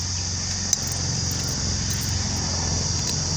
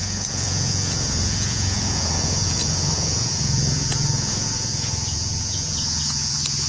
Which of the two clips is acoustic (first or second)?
first